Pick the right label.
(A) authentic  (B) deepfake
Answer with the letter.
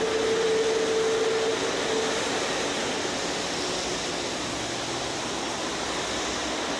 A